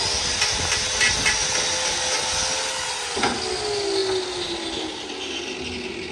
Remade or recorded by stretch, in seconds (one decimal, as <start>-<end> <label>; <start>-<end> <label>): 0.0-6.1 recorded